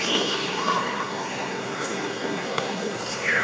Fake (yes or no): yes